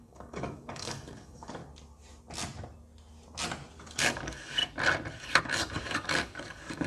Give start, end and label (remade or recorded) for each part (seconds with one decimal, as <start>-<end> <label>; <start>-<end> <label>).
0.0-1.6 remade; 1.6-3.8 recorded; 3.8-4.6 remade; 4.6-5.4 recorded; 5.4-6.9 remade

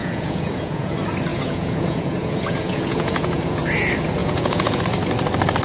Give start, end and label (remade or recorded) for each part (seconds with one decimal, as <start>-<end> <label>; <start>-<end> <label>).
0.0-0.9 remade; 0.9-1.3 recorded; 1.3-3.6 remade; 3.6-4.2 recorded; 4.2-4.8 remade; 4.8-5.6 recorded

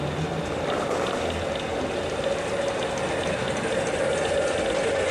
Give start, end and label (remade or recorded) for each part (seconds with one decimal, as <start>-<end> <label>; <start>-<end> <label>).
0.0-5.1 recorded